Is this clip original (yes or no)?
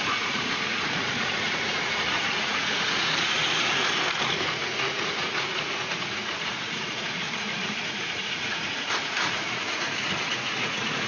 no